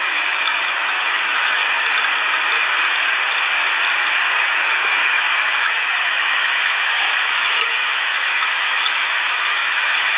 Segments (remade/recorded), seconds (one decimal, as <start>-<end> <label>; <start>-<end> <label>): 0.0-1.6 remade; 1.6-4.4 recorded; 4.4-10.2 remade